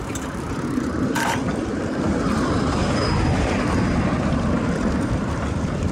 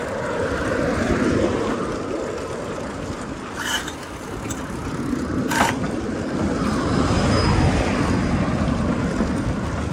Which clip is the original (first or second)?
second